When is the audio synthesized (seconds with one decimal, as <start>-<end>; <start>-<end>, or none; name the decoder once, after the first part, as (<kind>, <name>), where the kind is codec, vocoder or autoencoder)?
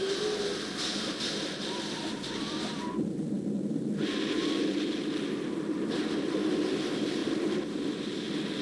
none